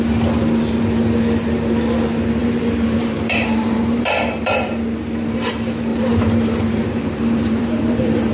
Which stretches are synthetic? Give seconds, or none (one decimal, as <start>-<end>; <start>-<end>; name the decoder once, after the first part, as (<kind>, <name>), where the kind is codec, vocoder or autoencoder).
2.4-4.7 (vocoder, BigVGAN v2); 5.9-8.3